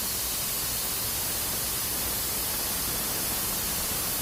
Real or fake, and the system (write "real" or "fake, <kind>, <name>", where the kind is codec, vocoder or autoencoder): real